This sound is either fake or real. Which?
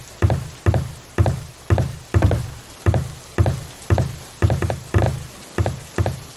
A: real